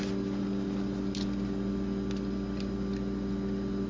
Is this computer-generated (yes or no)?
no